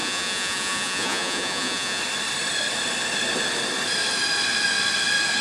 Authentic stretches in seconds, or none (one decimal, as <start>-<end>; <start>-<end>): 2.0-5.4